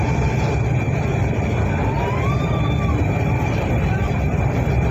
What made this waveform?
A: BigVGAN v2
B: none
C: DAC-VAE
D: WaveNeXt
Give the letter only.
A